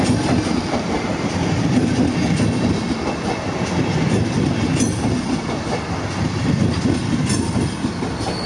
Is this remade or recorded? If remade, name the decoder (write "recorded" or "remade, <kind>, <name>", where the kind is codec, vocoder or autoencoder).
recorded